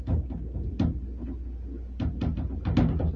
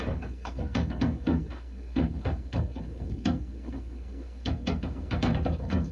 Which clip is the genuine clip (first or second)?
first